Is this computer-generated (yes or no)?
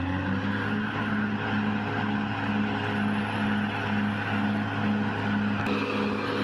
no